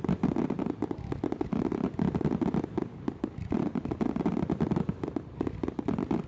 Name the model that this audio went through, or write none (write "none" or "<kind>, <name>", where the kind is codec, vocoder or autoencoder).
none